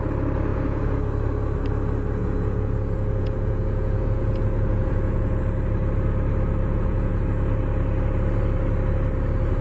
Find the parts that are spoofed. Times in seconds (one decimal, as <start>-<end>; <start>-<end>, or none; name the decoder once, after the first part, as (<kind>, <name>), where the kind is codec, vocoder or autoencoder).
0.5-1.0 (vocoder, Vocos); 2.2-5.4; 6.6-7.2